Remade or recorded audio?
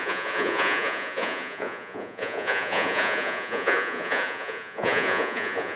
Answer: remade